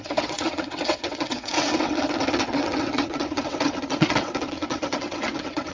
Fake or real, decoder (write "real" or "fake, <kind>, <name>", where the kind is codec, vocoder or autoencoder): fake, vocoder, WaveNeXt